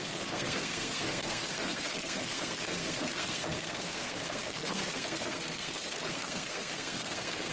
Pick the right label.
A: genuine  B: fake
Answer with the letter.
B